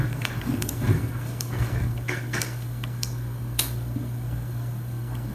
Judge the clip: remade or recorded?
remade